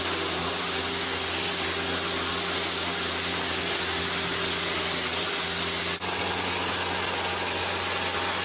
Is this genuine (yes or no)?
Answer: yes